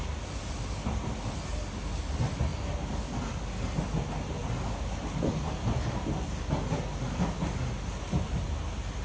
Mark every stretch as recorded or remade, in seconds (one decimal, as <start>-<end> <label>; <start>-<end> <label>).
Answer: 0.0-9.0 recorded